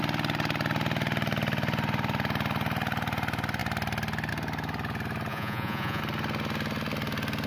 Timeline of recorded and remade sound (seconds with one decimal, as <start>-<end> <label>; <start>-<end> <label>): 0.0-5.3 recorded; 5.3-6.0 remade; 6.0-7.5 recorded